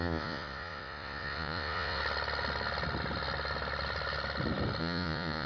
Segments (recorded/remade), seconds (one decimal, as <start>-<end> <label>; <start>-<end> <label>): 0.0-2.0 remade; 2.0-4.8 recorded; 4.8-5.5 remade